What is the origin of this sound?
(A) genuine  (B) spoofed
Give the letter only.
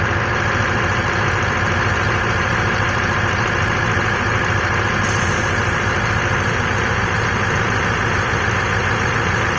A